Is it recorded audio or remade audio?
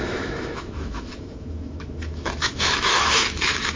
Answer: remade